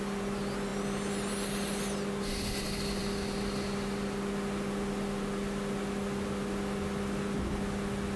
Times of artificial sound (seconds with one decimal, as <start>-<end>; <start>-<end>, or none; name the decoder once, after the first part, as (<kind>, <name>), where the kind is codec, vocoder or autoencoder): none

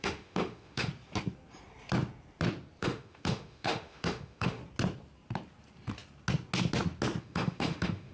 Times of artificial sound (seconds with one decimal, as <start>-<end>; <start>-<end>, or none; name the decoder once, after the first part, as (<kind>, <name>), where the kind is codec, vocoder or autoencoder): 0.0-0.9 (autoencoder, DAC-VAE); 2.8-4.6; 7.2-8.1